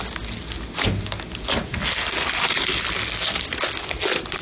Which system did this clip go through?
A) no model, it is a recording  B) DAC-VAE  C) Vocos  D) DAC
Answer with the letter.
A